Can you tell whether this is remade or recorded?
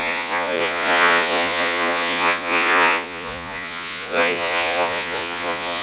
remade